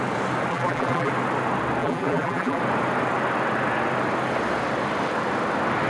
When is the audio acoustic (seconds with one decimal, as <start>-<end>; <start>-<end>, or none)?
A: 0.0-0.5; 1.1-1.8; 2.6-5.9